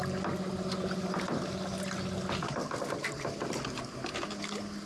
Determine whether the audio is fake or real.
real